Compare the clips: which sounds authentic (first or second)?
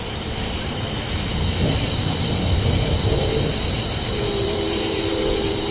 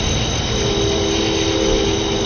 second